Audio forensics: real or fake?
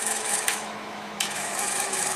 fake